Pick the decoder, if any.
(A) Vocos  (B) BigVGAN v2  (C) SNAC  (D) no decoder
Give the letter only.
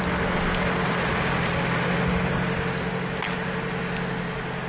D